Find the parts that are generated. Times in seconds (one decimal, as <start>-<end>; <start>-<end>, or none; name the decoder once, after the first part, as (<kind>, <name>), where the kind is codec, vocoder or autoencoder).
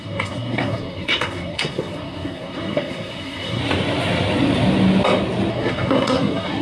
0.0-3.6 (codec, SNAC); 5.5-6.6